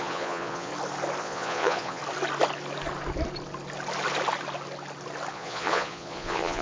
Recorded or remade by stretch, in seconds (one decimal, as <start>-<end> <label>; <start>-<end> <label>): 0.0-0.7 remade; 0.7-1.2 recorded; 1.2-2.0 remade; 2.0-5.3 recorded; 5.3-6.6 remade